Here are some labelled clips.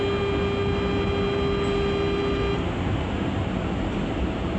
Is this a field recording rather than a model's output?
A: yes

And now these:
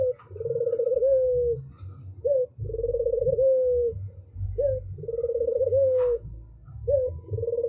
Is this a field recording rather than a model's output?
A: yes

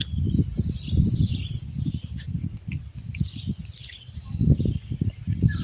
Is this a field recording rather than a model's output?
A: yes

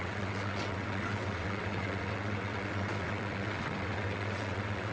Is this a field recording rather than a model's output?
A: no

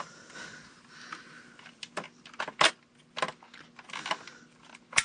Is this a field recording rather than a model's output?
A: yes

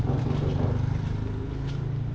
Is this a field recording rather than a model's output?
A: yes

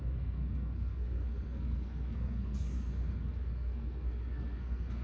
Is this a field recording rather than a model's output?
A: no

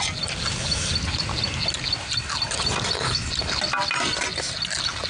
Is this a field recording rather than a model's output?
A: yes